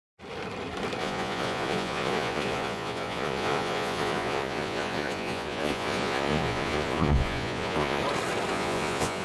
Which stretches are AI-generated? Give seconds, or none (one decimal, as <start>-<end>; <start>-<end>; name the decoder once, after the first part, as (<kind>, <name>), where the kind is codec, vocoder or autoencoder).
1.0-8.0 (vocoder, Vocos); 8.5-9.2